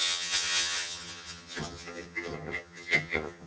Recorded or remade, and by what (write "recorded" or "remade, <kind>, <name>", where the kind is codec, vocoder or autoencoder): remade, vocoder, HiFi-GAN